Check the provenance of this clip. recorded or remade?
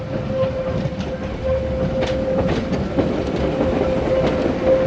recorded